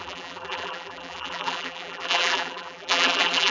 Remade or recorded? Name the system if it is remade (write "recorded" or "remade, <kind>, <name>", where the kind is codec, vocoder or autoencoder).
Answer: remade, vocoder, BigVGAN v2